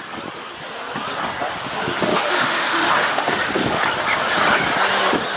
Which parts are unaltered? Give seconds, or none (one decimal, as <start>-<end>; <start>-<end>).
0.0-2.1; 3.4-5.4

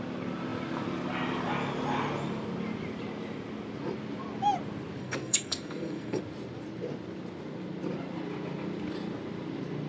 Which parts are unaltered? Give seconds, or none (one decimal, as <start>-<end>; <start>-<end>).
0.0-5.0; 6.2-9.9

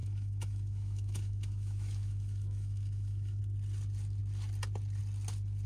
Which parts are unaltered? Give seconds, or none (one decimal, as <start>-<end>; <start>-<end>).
3.4-5.7

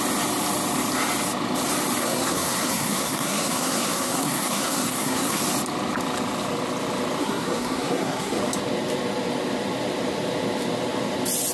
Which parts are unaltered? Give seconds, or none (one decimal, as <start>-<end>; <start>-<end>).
0.0-2.0; 5.4-7.2; 8.4-11.5

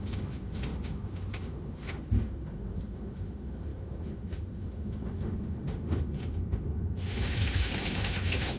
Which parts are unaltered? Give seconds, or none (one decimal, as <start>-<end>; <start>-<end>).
none